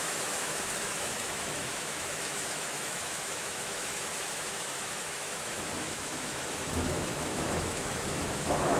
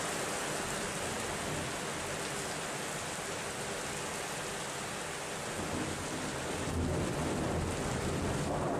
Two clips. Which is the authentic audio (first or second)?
second